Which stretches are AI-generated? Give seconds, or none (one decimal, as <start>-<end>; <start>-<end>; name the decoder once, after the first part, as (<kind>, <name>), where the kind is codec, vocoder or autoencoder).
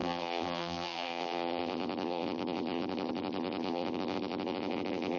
0.0-5.2 (vocoder, BigVGAN v2)